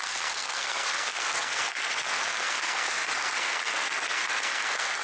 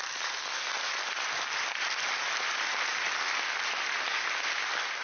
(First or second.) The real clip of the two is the second